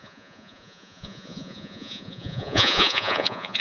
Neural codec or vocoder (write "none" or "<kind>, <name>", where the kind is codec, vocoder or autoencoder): vocoder, Vocos